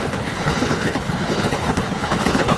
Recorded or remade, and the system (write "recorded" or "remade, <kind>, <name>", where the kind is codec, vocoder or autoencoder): remade, codec, HILCodec